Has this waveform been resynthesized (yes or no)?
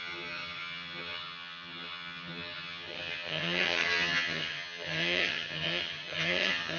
yes